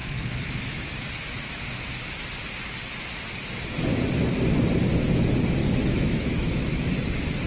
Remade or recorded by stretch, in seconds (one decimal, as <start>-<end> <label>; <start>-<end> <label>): 0.0-2.0 remade; 2.0-5.6 recorded; 5.6-6.9 remade; 6.9-7.5 recorded